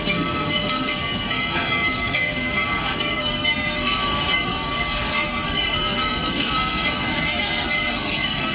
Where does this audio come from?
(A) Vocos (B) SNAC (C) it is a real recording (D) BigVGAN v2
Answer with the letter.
B